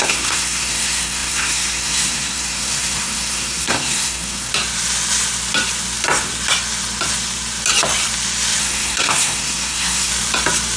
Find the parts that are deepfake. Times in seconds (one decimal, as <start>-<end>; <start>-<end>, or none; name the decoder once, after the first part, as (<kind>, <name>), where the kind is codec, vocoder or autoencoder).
0.0-4.5 (codec, SNAC); 8.6-10.1